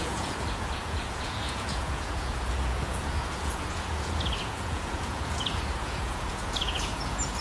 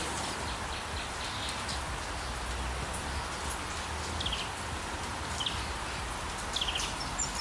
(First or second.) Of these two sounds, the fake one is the first